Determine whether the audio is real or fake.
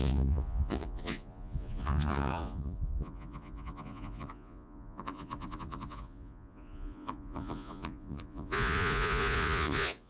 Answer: fake